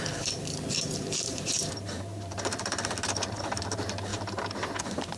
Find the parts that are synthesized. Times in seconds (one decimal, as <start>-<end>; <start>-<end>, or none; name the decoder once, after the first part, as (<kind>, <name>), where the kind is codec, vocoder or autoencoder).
0.0-4.1 (vocoder, BigVGAN v2); 4.8-5.2